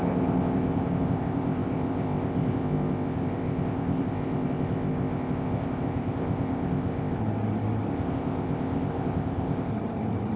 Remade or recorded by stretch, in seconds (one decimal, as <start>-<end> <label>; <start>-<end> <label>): 0.0-7.2 remade; 7.2-7.9 recorded; 7.9-9.7 remade; 9.7-10.4 recorded

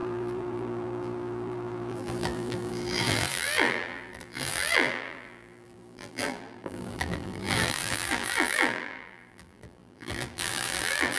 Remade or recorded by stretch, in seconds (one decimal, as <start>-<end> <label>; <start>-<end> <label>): 0.0-11.2 remade

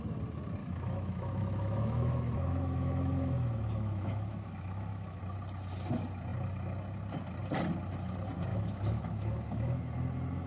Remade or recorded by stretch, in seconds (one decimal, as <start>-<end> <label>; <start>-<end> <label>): 0.0-0.6 recorded; 0.6-5.2 remade; 5.2-8.5 recorded; 8.5-9.8 remade; 9.8-10.5 recorded

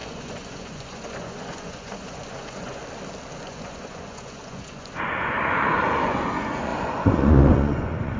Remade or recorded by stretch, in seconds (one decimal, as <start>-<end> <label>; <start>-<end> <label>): 0.0-2.8 remade; 2.8-3.4 recorded; 3.4-8.2 remade